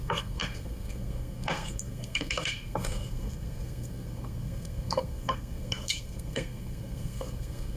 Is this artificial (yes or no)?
yes